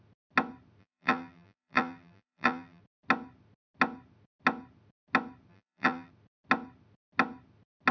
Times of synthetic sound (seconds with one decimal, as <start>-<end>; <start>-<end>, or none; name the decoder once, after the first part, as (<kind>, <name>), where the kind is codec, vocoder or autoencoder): 0.8-2.8 (vocoder, BigVGAN v2); 5.5-6.1